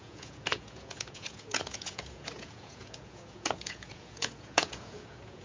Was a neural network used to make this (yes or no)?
yes